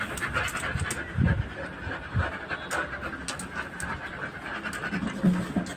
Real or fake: real